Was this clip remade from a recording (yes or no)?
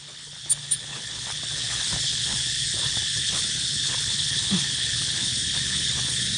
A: yes